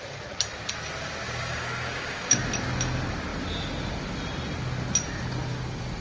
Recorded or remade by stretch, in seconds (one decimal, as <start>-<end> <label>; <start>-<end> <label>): 0.0-1.4 recorded; 1.4-2.4 remade; 2.4-6.0 recorded